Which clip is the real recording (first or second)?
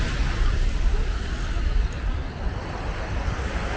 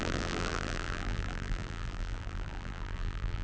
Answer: first